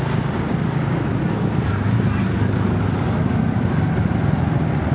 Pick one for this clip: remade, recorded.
recorded